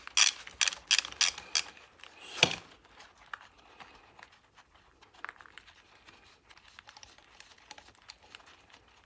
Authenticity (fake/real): real